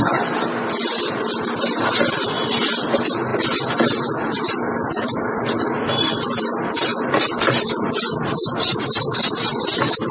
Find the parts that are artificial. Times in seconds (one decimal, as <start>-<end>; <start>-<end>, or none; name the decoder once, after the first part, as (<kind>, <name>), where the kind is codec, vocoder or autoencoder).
6.9-7.5 (vocoder, BigVGAN v2); 8.7-9.7